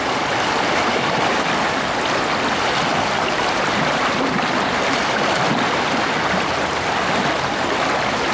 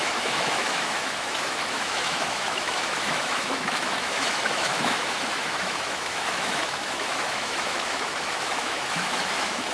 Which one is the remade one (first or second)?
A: second